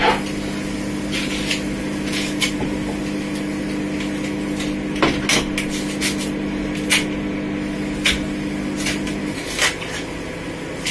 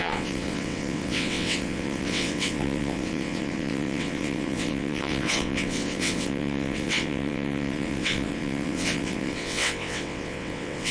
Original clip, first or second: first